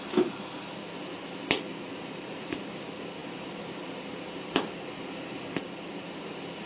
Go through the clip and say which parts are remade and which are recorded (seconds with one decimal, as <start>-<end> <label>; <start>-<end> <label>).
0.0-1.7 recorded; 1.7-2.8 remade; 2.8-3.2 recorded; 3.2-6.3 remade; 6.3-6.7 recorded